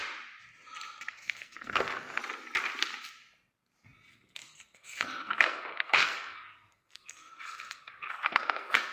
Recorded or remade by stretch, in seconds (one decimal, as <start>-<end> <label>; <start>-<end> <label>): 0.0-1.1 recorded; 1.1-2.2 remade; 2.2-4.1 recorded; 4.1-8.9 remade